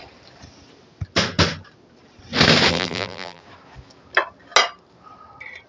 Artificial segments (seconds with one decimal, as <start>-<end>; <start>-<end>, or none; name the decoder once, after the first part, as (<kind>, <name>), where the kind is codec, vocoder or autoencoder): 2.7-3.4 (vocoder, BigVGAN v2)